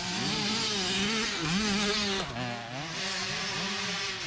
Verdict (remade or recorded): recorded